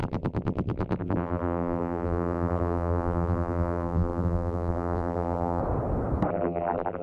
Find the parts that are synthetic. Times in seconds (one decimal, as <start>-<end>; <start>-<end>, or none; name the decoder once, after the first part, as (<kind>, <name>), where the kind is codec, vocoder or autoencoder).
0.0-5.6 (vocoder, BigVGAN v2); 6.3-7.0